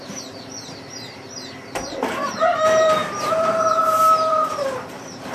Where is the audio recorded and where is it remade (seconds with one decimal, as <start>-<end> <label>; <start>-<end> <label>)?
0.0-5.3 remade